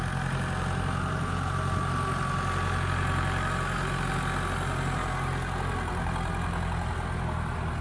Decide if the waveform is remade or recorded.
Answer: recorded